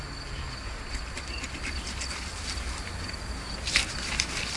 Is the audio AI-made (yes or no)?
no